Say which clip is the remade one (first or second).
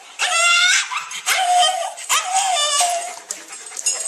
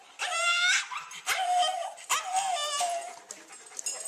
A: first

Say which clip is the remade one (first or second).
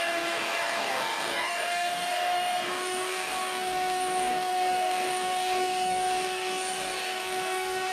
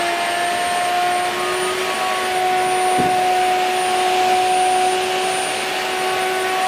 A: first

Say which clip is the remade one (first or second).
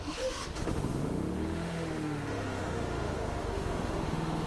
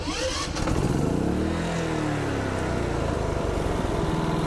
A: first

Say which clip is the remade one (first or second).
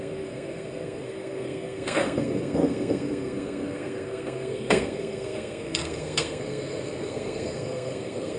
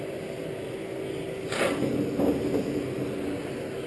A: first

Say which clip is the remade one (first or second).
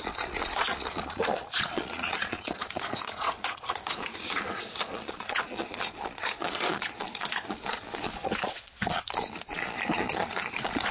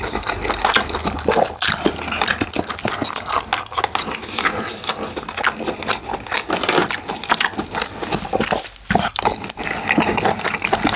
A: first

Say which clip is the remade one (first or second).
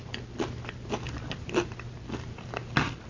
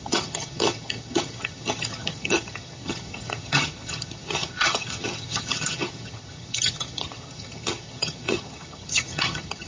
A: second